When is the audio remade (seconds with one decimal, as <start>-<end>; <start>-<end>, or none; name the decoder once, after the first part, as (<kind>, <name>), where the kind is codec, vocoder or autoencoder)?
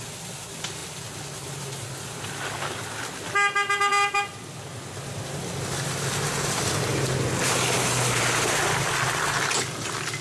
none